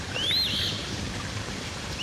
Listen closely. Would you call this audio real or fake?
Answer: real